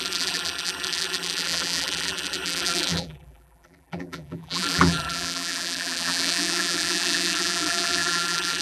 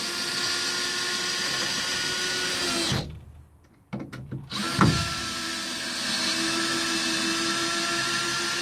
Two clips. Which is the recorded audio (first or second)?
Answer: second